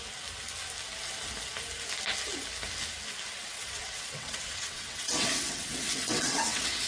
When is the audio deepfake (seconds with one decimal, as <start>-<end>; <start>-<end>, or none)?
3.4-6.9